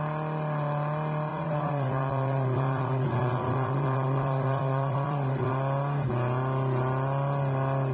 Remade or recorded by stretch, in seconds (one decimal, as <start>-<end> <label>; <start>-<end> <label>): 0.0-1.3 recorded; 1.3-5.5 remade; 5.5-7.9 recorded